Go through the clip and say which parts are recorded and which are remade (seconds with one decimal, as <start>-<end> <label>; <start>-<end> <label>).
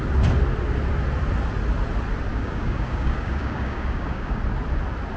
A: 0.0-2.3 recorded; 2.3-4.4 remade; 4.4-5.2 recorded